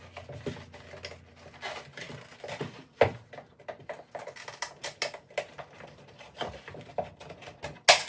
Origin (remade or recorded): recorded